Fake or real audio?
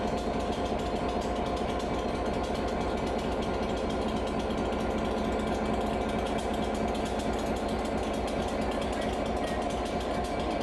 real